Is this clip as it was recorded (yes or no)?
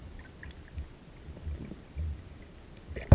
yes